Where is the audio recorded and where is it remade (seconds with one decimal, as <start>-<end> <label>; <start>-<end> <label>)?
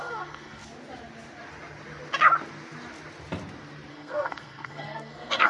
0.0-0.6 remade; 0.6-3.9 recorded; 3.9-5.5 remade